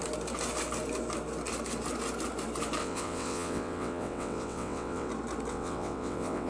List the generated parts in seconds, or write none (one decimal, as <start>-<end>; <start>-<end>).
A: 2.8-5.1; 5.5-6.5

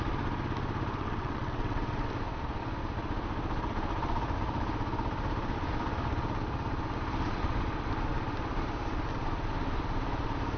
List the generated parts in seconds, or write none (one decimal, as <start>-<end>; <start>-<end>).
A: 1.0-2.1

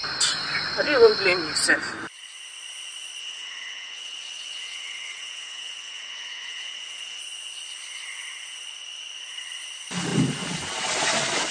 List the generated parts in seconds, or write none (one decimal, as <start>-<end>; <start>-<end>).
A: 3.2-7.2

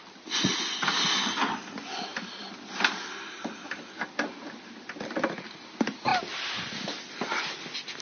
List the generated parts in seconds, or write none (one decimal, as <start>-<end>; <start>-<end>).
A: none

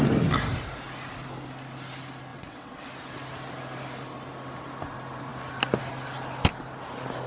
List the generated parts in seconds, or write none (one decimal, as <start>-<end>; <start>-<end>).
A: 2.3-2.9